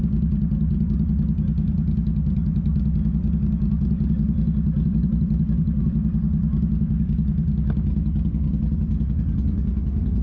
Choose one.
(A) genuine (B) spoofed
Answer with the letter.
A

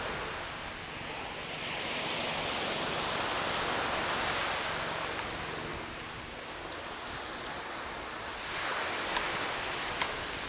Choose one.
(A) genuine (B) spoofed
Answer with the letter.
A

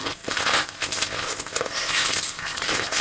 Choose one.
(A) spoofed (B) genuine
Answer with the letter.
A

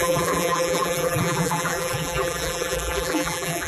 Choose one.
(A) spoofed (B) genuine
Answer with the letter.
A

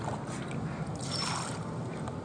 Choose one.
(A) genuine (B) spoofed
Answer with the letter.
A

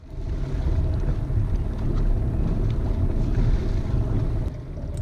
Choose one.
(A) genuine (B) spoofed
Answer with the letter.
A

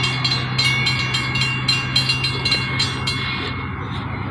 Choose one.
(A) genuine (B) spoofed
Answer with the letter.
A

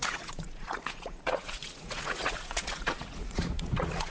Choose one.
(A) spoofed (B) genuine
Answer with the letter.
A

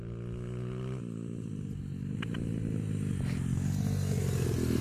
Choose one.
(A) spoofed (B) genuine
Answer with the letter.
B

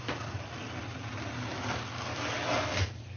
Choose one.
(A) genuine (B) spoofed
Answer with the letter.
A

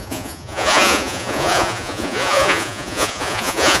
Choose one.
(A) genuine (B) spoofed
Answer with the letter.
B